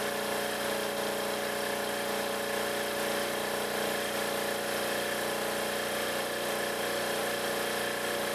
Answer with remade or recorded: recorded